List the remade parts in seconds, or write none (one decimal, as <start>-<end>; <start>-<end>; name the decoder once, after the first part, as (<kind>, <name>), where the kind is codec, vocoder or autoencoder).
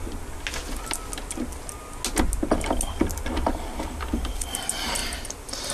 3.4-5.7 (vocoder, BigVGAN v2)